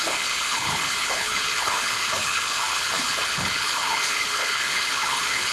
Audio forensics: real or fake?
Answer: fake